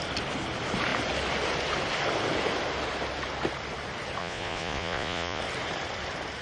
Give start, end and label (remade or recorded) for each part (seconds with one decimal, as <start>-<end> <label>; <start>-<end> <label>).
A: 0.0-4.2 recorded; 4.2-5.4 remade; 5.4-6.4 recorded